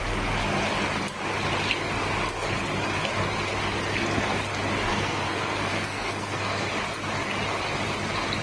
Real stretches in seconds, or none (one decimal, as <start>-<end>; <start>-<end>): 0.0-4.9; 6.7-8.4